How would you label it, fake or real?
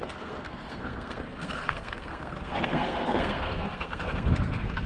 fake